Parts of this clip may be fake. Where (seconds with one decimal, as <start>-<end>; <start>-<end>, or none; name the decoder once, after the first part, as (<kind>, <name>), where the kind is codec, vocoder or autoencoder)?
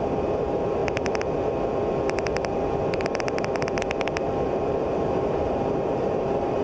0.0-0.8 (vocoder, BigVGAN v2); 4.8-6.6